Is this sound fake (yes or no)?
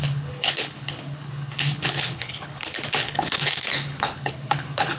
yes